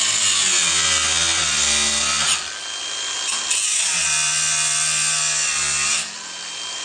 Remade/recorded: recorded